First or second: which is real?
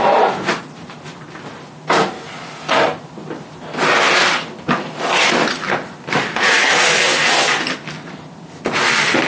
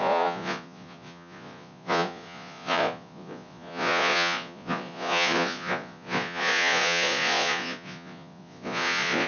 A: first